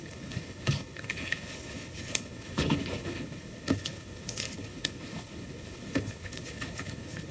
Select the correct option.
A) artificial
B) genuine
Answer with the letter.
A